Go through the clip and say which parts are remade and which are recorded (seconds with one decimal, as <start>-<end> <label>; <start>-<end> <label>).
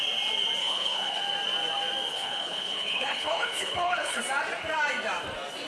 0.0-0.6 recorded; 0.6-1.2 remade; 1.2-2.1 recorded; 2.1-4.2 remade; 4.2-5.7 recorded